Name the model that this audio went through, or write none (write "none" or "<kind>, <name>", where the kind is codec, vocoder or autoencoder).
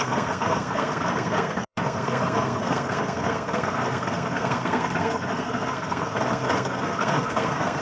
codec, SNAC